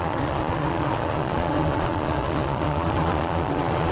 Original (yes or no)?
no